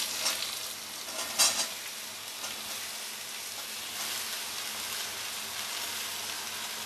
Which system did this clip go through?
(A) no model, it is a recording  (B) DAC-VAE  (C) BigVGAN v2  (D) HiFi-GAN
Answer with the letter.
A